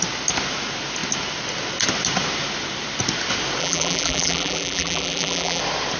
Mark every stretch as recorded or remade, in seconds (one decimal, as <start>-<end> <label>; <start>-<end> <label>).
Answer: 0.0-3.6 recorded; 3.6-5.6 remade; 5.6-6.0 recorded